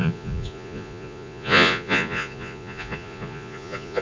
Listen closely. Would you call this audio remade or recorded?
remade